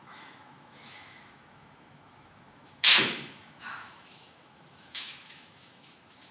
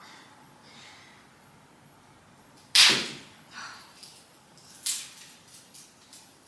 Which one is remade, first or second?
first